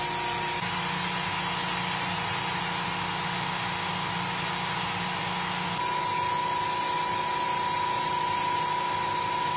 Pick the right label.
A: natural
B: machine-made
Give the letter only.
A